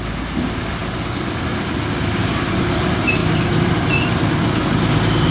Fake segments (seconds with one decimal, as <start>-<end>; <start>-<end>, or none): none